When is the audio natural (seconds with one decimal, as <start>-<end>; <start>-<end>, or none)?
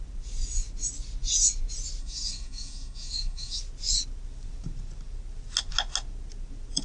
0.0-2.0; 3.6-6.8